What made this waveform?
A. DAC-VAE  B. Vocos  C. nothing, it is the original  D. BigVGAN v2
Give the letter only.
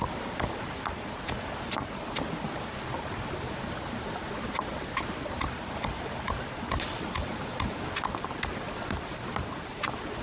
D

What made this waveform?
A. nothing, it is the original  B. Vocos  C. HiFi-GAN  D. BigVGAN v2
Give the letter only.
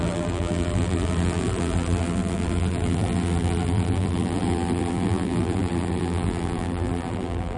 D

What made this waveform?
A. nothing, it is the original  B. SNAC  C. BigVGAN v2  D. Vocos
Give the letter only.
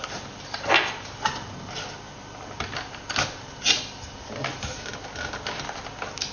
A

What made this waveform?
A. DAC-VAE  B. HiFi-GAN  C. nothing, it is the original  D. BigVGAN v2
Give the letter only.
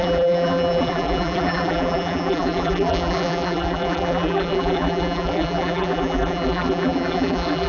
D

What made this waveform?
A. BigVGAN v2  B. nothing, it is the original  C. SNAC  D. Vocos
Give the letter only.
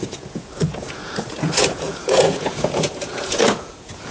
D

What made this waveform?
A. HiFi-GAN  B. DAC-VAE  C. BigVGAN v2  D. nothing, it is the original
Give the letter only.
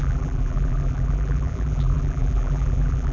C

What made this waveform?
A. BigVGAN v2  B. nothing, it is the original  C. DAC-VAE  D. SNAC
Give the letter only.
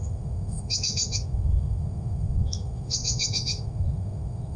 C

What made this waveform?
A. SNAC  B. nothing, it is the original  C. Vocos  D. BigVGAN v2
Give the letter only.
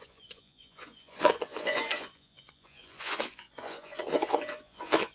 C